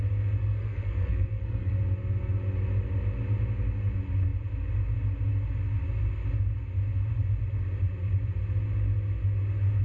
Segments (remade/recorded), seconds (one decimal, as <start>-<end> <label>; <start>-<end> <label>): 0.0-0.4 recorded; 0.4-1.7 remade; 1.7-9.8 recorded